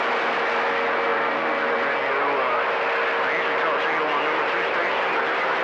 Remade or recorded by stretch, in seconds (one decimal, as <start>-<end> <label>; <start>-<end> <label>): 0.0-5.6 recorded